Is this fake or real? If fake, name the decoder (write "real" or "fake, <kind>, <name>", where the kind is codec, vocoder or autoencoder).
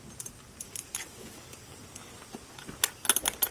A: real